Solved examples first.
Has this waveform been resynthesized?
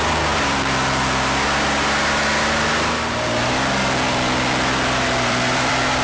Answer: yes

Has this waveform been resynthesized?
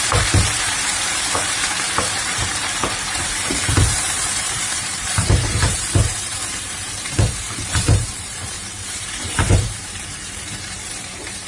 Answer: yes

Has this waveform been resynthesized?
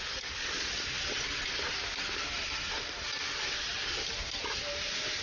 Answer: no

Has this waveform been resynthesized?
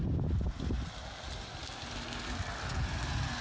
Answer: no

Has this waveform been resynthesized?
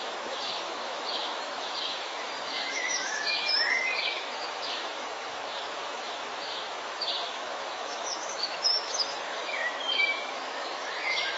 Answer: yes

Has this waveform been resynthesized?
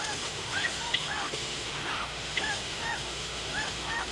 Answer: yes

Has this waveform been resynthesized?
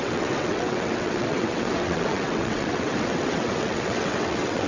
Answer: yes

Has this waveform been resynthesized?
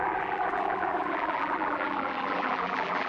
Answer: yes